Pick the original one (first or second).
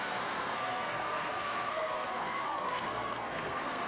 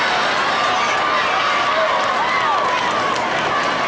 second